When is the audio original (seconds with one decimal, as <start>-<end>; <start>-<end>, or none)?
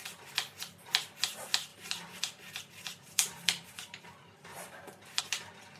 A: 0.0-1.7; 5.2-5.8